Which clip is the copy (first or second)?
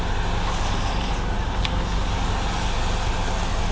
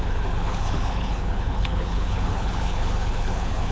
second